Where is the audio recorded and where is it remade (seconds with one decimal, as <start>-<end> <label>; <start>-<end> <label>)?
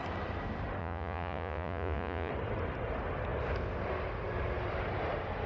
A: 0.0-0.8 recorded; 0.8-2.3 remade; 2.3-5.5 recorded